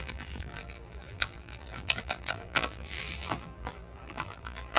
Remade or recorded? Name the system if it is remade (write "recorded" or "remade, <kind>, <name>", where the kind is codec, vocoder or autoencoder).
remade, vocoder, BigVGAN v2